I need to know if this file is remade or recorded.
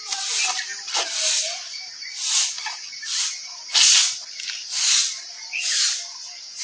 recorded